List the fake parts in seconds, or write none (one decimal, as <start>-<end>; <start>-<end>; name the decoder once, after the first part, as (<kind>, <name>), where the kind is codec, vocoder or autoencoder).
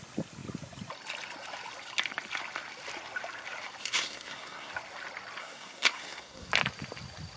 3.8-4.7 (codec, SNAC); 5.4-6.5